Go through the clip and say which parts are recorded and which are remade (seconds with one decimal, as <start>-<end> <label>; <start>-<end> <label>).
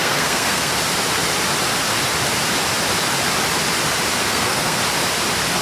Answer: 0.0-0.7 remade; 0.7-4.2 recorded; 4.2-4.8 remade; 4.8-5.6 recorded